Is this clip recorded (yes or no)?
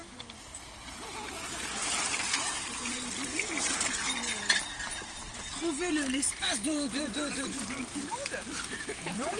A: no